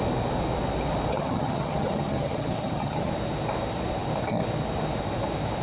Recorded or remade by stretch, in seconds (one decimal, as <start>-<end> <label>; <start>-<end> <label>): 0.0-1.1 recorded; 1.1-3.1 remade; 3.1-5.6 recorded